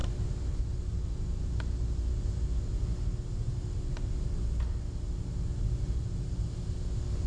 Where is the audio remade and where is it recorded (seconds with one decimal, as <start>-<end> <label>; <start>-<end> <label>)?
0.0-7.3 recorded